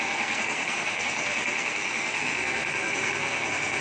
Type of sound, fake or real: fake